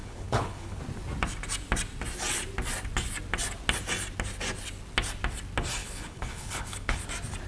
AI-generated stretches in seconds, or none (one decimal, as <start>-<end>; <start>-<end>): 0.0-0.8; 5.8-7.0